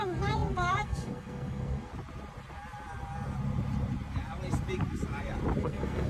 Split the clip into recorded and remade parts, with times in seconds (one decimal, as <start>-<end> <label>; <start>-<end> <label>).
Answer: 0.0-1.9 remade; 1.9-5.6 recorded; 5.6-6.1 remade